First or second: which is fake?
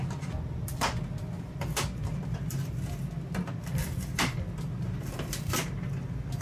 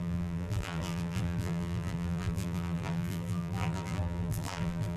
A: second